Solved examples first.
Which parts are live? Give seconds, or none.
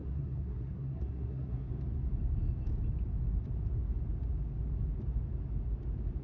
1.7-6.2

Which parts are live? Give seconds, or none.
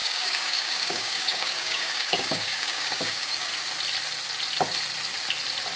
3.5-5.8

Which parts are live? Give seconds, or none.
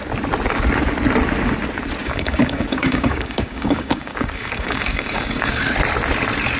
0.0-2.0; 5.6-6.6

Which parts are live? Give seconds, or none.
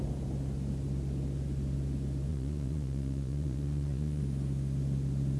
0.0-2.3; 4.2-5.4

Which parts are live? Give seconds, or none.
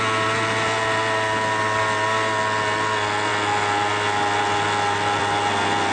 0.0-5.9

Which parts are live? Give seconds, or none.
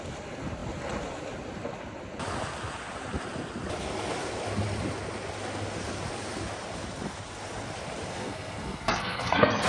0.0-8.1